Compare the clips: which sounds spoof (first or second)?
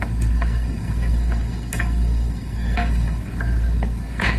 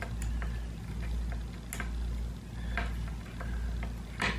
first